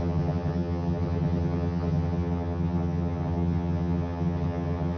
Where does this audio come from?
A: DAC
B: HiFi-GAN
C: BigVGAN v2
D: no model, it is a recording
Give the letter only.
B